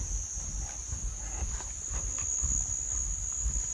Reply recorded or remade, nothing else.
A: remade